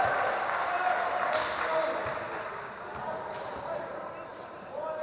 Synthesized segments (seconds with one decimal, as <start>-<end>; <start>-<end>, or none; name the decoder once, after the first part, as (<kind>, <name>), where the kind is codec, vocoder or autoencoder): 0.0-0.8 (vocoder, BigVGAN v2); 3.8-5.0